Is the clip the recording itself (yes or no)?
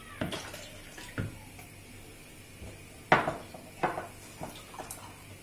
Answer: yes